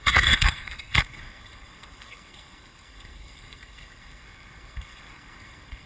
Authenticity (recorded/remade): remade